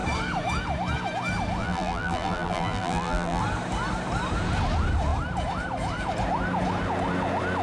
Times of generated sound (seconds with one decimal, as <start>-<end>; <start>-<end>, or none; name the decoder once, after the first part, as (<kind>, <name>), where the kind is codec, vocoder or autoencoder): 1.6-3.4 (vocoder, BigVGAN v2)